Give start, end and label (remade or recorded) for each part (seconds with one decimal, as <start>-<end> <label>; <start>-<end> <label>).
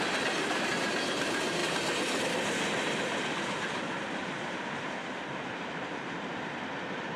0.0-4.2 recorded; 4.2-6.2 remade; 6.2-7.2 recorded